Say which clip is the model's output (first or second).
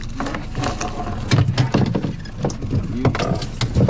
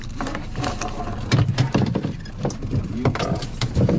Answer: second